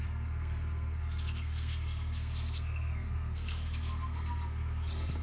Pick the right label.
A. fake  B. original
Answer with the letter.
A